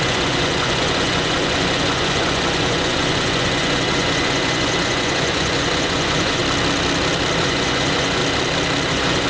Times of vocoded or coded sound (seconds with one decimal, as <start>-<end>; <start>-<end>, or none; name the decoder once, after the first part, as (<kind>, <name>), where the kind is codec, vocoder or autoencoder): 0.0-6.4 (vocoder, Vocos); 7.4-8.2; 8.9-9.3